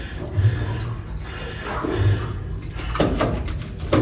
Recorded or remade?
recorded